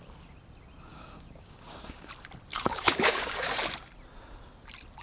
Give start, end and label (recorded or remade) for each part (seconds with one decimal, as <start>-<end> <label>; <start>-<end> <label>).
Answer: 0.0-0.9 recorded; 0.9-2.1 remade; 2.1-2.5 recorded; 2.5-3.5 remade; 3.5-5.0 recorded